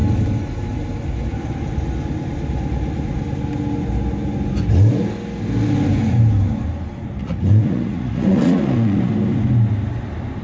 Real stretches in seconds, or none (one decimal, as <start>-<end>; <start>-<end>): 0.0-7.2; 9.1-10.4